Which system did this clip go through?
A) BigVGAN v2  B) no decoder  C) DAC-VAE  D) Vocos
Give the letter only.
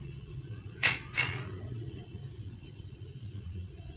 D